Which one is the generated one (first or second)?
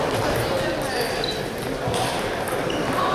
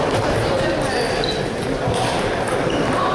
second